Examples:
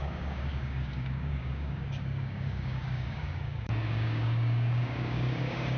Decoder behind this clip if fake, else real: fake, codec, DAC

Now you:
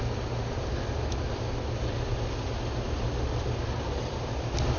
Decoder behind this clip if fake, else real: real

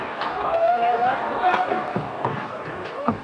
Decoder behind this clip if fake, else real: fake, codec, DAC